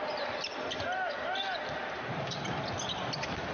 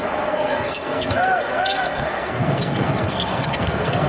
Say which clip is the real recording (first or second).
first